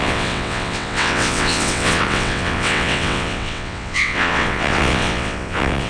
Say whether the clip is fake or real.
fake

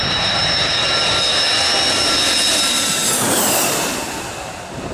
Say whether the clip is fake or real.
real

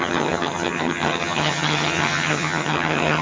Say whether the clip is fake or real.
fake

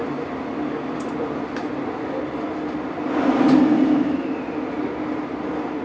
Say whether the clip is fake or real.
real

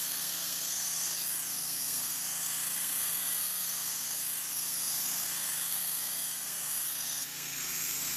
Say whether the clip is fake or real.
fake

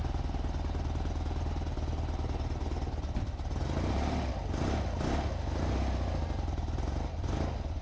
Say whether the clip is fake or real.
real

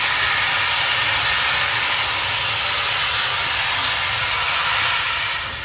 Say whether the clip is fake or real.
real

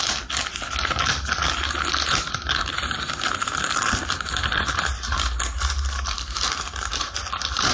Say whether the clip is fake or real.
real